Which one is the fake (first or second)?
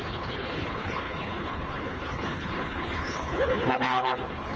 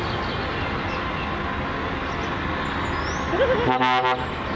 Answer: first